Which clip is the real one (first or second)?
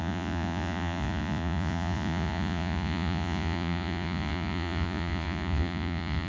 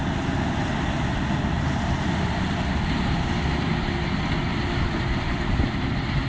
second